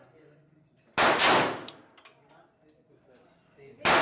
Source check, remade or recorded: recorded